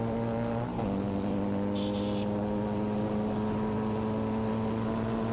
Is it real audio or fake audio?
real